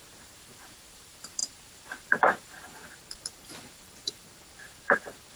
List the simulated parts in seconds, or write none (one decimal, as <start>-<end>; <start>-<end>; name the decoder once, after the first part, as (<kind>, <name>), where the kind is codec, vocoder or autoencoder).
0.0-5.4 (vocoder, BigVGAN v2)